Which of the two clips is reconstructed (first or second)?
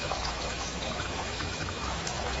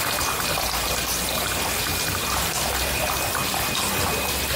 first